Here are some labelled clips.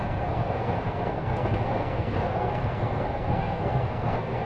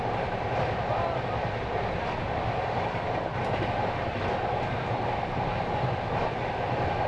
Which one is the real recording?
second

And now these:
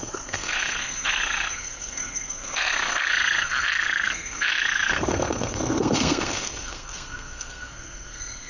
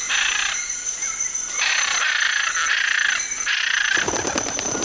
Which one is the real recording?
second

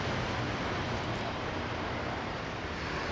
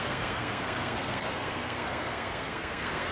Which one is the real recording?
first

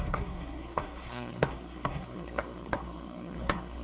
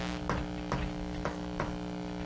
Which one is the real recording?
second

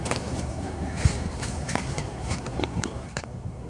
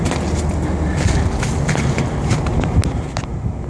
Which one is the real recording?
second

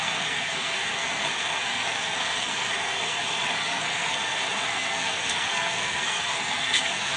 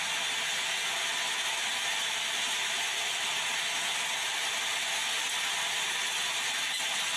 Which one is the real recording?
second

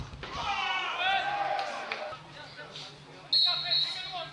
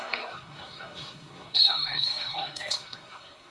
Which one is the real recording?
first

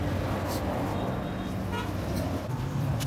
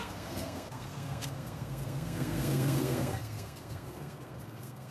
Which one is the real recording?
first